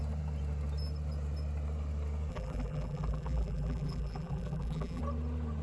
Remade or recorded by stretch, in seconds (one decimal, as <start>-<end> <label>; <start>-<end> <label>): 0.0-2.3 recorded; 2.3-5.0 remade; 5.0-5.6 recorded